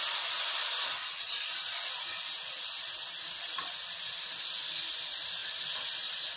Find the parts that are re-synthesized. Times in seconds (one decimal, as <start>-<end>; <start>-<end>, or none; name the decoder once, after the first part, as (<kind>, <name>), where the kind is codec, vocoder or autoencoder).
none